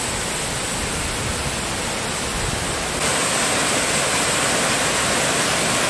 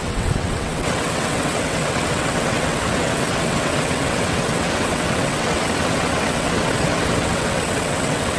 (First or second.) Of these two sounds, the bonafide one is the first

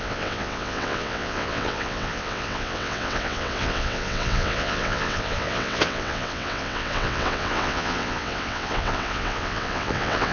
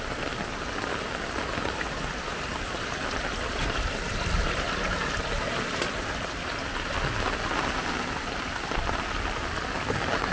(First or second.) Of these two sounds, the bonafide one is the second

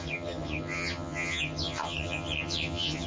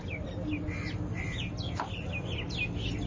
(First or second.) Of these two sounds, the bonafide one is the second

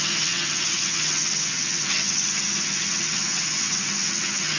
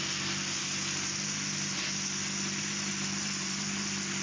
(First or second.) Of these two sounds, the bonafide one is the second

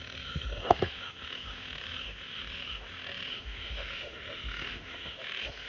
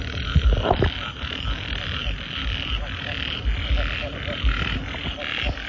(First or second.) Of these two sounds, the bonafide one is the second